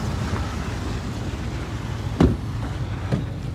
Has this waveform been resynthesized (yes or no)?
no